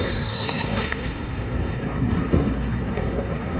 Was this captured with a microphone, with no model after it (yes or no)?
no